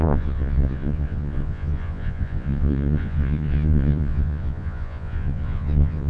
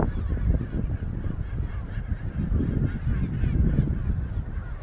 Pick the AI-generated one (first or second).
first